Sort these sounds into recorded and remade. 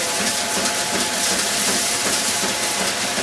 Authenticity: recorded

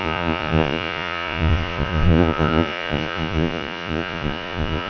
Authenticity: remade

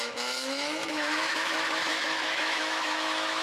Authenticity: remade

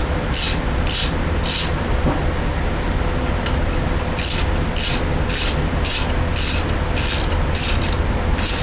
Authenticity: recorded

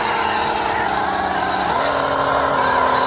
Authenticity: recorded